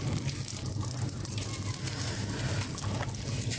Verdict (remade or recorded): recorded